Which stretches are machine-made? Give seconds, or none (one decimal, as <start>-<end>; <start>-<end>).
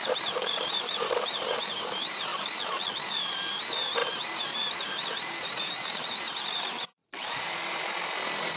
0.0-2.3; 3.1-7.0